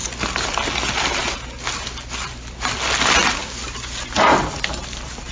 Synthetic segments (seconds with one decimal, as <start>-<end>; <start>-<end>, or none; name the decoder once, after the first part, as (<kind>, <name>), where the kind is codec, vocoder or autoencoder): none